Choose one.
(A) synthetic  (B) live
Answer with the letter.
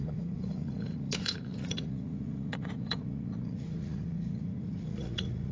A